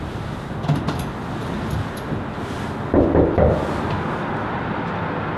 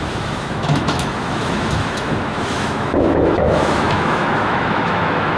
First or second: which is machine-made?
second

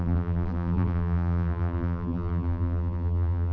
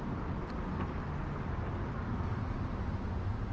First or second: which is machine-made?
first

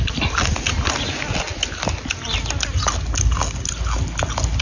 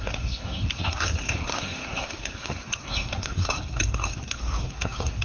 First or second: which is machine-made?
second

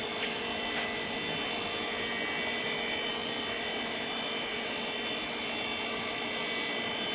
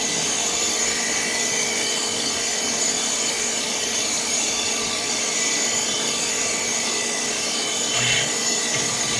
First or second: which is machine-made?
second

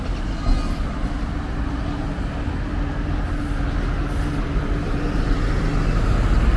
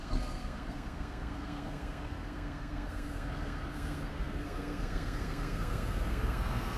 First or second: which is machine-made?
second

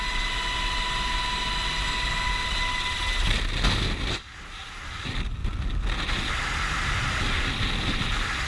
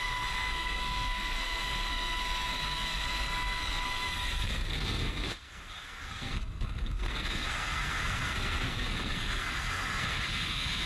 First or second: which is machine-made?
second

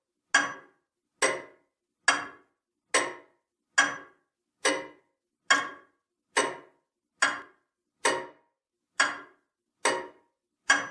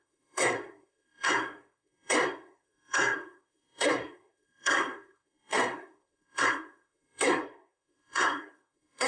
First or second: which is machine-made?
second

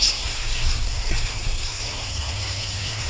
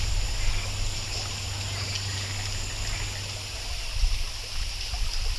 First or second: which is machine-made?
first